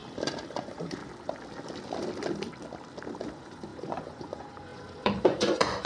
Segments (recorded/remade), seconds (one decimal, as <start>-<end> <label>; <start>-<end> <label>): 0.0-0.6 recorded; 0.6-1.0 remade; 1.0-3.3 recorded; 3.3-5.9 remade